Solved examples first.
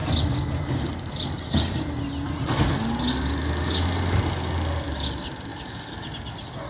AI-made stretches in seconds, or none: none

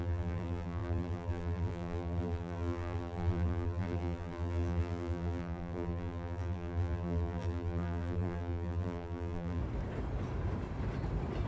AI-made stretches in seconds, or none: 0.0-9.6 (vocoder, BigVGAN v2)

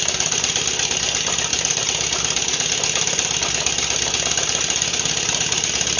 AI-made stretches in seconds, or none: none